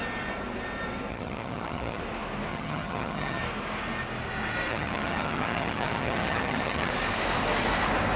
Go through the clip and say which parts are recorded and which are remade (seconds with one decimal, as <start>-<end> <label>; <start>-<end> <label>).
0.0-1.1 recorded; 1.1-2.0 remade; 2.0-2.5 recorded; 2.5-3.4 remade; 3.4-4.7 recorded; 4.7-6.9 remade; 6.9-8.2 recorded